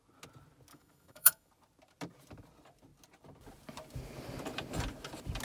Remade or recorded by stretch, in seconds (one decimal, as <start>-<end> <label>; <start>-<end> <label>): 0.0-0.7 recorded; 0.7-1.5 remade; 1.5-5.4 recorded